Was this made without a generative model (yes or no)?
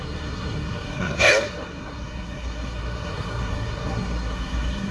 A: no